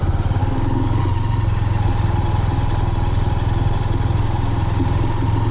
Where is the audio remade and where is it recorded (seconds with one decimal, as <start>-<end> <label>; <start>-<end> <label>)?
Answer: 0.0-0.4 recorded; 0.4-1.0 remade; 1.0-5.5 recorded